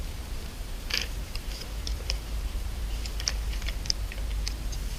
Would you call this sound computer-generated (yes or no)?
yes